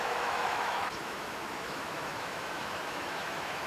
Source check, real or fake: fake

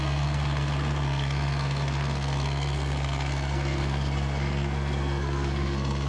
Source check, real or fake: fake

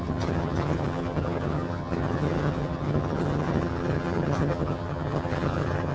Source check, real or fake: fake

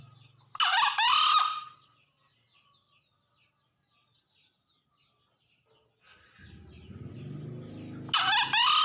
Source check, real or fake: real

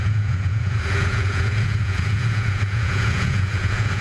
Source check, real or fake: fake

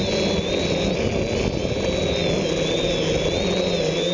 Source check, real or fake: real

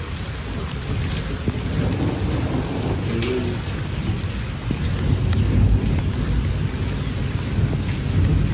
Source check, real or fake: real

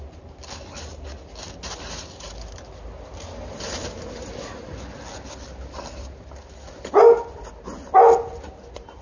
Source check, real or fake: real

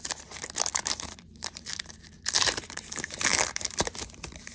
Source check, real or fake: fake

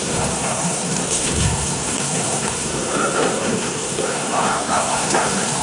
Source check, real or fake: fake